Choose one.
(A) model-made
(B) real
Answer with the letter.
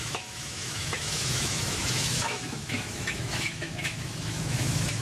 A